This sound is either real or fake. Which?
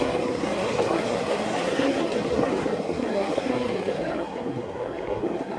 fake